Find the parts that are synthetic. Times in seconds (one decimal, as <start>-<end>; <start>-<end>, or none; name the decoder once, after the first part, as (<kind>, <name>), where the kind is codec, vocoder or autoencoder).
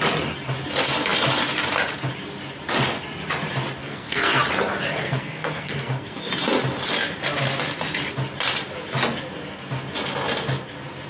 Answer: 3.8-4.4 (codec, SNAC); 5.0-6.3